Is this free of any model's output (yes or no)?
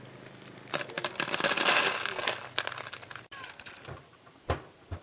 yes